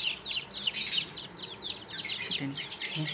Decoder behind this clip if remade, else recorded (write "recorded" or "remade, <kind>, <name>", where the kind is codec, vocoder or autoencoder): recorded